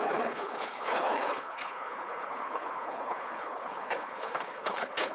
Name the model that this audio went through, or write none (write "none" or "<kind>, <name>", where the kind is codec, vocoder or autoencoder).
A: codec, HILCodec